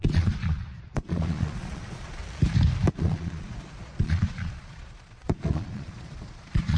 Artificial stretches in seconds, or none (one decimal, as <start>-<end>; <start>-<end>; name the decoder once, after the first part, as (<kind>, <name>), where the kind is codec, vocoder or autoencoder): 0.0-2.2 (vocoder, Vocos); 2.9-6.8